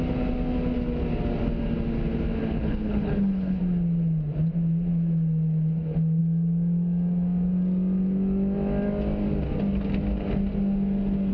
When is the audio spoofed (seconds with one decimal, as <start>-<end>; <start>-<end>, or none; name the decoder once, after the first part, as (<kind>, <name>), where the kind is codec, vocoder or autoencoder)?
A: 2.4-3.6 (codec, HILCodec)